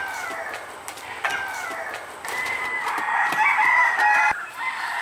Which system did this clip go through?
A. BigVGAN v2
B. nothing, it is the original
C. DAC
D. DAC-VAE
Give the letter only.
B